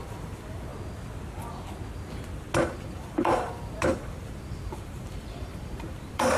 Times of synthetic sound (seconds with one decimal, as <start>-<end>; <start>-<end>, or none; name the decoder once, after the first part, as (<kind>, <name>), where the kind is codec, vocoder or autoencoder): 0.0-0.7 (vocoder, BigVGAN v2); 2.6-6.4